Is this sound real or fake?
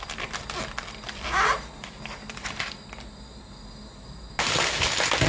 real